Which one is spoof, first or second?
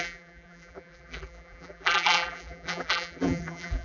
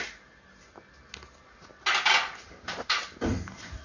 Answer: first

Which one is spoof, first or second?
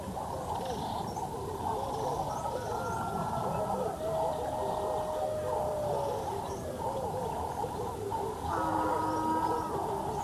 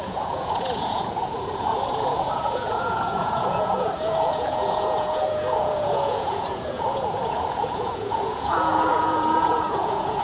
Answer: second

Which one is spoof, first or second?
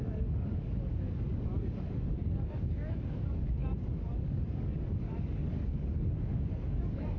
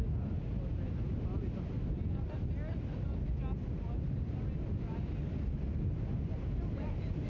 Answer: first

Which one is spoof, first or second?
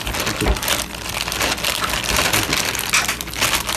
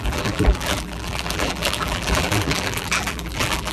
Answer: second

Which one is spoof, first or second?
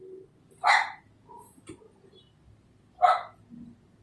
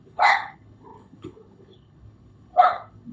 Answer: second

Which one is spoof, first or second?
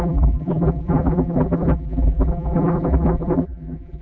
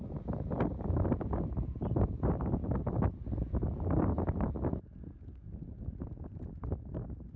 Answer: first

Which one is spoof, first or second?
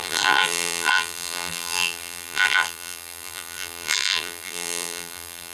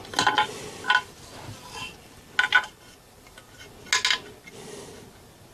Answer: first